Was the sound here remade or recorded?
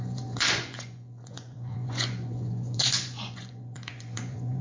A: remade